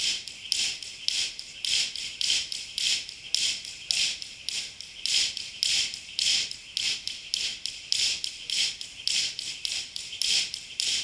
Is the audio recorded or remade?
recorded